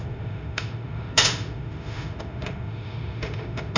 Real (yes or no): no